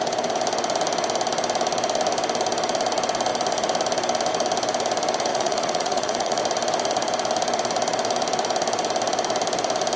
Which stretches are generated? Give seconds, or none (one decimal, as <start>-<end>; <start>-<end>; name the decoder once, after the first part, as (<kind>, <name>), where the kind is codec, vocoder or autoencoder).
5.3-6.4 (vocoder, Vocos)